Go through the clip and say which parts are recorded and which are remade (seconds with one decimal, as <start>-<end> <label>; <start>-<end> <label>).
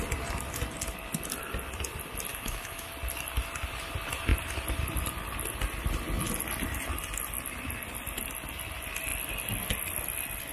0.0-2.3 recorded; 2.3-2.9 remade; 2.9-10.5 recorded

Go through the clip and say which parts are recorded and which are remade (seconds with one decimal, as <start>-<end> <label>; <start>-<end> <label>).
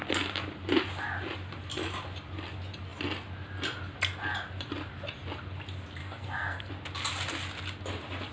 0.0-6.0 recorded; 6.0-6.7 remade; 6.7-8.3 recorded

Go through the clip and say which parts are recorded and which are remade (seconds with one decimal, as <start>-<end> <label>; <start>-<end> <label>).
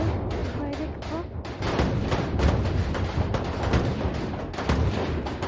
0.0-5.5 recorded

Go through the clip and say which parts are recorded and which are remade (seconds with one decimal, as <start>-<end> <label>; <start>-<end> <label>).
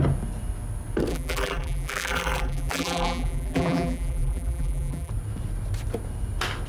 0.0-1.1 recorded; 1.1-5.1 remade; 5.1-6.7 recorded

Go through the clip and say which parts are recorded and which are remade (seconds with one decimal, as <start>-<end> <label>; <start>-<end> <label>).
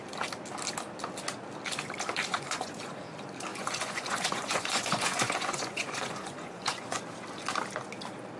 0.0-2.3 recorded; 2.3-2.9 remade; 2.9-3.5 recorded; 3.5-7.0 remade; 7.0-8.4 recorded